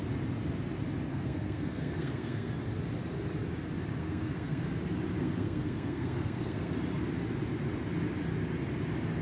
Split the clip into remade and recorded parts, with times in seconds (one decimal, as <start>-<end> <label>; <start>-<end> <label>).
0.0-1.1 recorded; 1.1-2.5 remade; 2.5-4.0 recorded; 4.0-4.6 remade; 4.6-5.2 recorded; 5.2-6.7 remade; 6.7-9.2 recorded